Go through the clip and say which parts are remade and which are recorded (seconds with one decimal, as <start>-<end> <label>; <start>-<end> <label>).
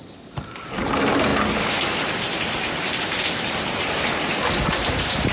0.0-5.3 recorded